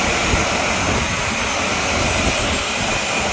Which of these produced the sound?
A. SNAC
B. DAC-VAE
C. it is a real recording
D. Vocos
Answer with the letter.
C